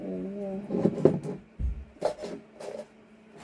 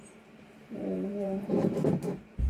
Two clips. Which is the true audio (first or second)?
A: first